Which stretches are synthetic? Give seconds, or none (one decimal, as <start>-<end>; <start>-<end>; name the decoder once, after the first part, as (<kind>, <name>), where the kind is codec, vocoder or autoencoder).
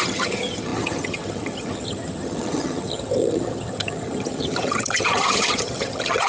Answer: 0.0-6.3 (vocoder, HiFi-GAN)